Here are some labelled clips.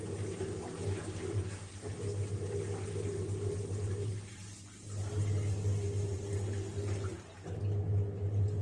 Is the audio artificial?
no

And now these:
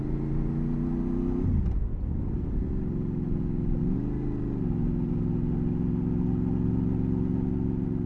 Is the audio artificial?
no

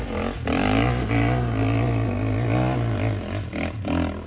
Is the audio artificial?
no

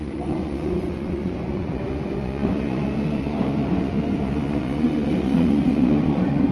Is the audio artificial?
yes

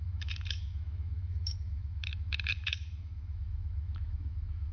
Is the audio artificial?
yes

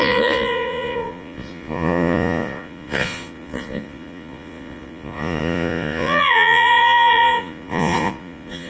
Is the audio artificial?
yes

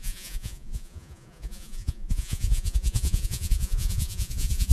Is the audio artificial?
yes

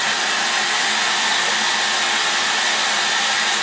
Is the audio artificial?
no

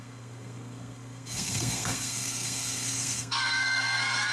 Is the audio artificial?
yes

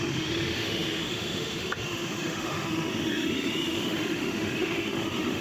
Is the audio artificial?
yes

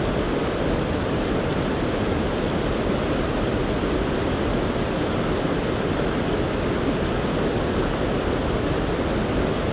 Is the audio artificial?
no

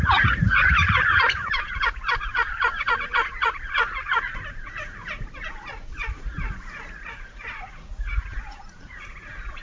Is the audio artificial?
yes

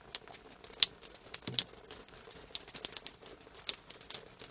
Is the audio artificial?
no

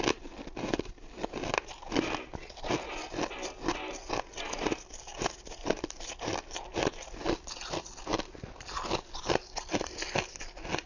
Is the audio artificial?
no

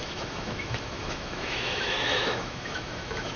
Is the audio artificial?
yes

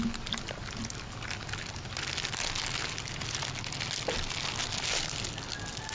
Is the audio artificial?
no